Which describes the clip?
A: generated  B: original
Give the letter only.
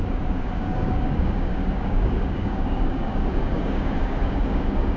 A